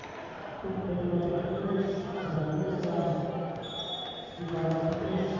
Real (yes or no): yes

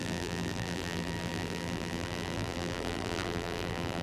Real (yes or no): no